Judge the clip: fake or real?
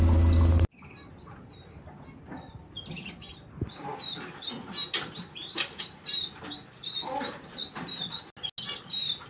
real